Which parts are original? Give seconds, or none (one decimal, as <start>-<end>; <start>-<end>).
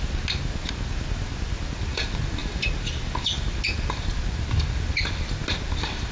0.0-6.1